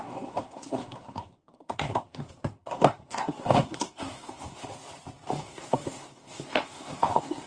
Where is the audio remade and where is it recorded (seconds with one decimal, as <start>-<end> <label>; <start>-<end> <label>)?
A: 0.0-4.6 remade; 4.6-5.4 recorded; 5.4-7.5 remade